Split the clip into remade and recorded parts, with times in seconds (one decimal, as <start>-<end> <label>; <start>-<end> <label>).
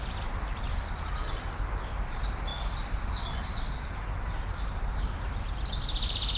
0.0-6.4 recorded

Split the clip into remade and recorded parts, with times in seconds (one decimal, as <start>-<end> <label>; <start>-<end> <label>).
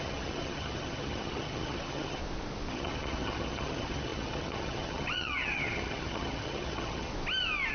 0.0-2.2 remade; 2.2-2.7 recorded; 2.7-7.1 remade; 7.1-7.7 recorded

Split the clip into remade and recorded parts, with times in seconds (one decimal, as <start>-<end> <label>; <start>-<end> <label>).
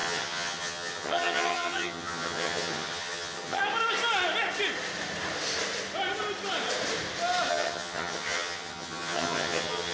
0.0-3.6 remade; 3.6-7.5 recorded; 7.5-9.9 remade